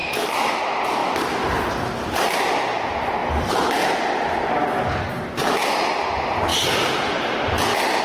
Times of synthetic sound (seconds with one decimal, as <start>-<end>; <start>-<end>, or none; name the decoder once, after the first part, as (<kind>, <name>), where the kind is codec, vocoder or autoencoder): 0.0-0.6 (autoencoder, DAC-VAE)